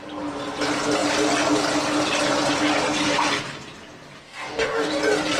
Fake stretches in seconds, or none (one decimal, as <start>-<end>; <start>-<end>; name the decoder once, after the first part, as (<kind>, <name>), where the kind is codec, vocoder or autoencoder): 4.2-5.0 (codec, DAC)